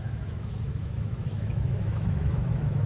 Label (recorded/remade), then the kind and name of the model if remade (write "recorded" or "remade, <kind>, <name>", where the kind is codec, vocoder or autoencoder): remade, autoencoder, DAC-VAE